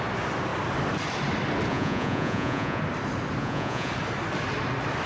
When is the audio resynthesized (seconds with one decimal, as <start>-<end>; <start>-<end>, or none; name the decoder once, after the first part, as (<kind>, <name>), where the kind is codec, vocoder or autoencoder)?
1.7-2.8 (vocoder, Vocos); 3.4-3.9